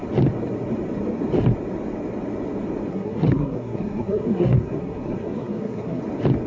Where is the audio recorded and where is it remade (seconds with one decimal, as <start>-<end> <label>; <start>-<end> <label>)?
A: 0.0-2.9 recorded; 2.9-6.0 remade; 6.0-6.5 recorded

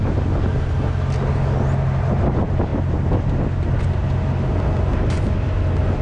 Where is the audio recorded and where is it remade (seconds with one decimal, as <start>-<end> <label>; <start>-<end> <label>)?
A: 0.0-6.0 recorded

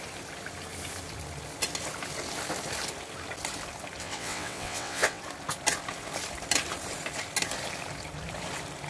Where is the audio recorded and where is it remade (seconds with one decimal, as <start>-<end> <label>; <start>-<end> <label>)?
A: 0.0-4.0 recorded; 4.0-5.2 remade; 5.2-8.9 recorded

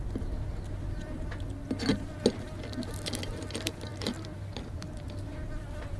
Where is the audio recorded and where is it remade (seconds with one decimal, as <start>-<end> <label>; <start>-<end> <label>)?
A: 0.0-6.0 recorded

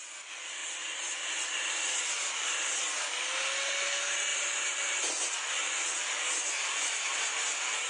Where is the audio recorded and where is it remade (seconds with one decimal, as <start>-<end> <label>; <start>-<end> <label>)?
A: 0.0-4.3 recorded; 4.3-5.0 remade; 5.0-7.9 recorded

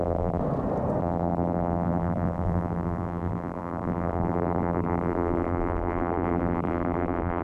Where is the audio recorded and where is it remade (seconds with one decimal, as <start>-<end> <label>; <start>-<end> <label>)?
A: 0.0-0.4 remade; 0.4-1.0 recorded; 1.0-7.4 remade

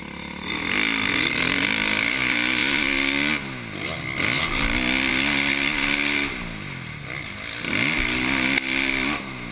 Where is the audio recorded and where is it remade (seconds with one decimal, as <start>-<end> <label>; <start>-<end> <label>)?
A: 0.0-9.5 recorded